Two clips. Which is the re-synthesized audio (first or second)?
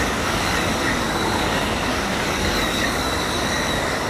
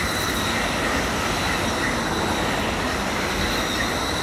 first